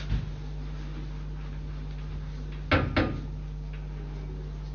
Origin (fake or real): real